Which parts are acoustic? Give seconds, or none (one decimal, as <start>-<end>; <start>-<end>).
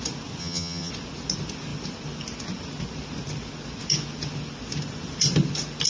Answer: 0.0-0.4; 0.9-5.9